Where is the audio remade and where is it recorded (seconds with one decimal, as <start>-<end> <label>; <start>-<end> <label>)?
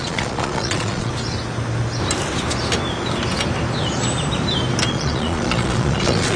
0.0-1.1 remade; 1.1-4.9 recorded; 4.9-6.4 remade